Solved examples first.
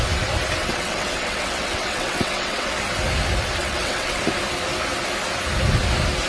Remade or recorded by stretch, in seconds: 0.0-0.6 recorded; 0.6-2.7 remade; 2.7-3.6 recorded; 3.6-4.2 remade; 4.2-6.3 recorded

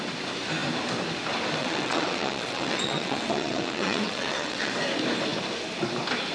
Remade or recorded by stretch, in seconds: 0.0-1.6 recorded; 1.6-4.7 remade; 4.7-6.3 recorded

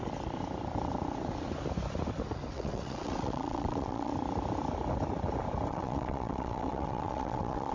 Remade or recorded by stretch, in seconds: 0.0-2.5 recorded; 2.5-4.1 remade; 4.1-5.7 recorded; 5.7-7.7 remade